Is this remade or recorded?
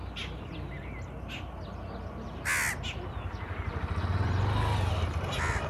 recorded